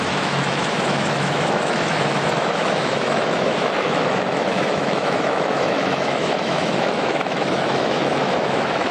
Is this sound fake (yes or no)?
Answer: yes